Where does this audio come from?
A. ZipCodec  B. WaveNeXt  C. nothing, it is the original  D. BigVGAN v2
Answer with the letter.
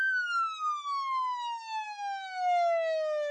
C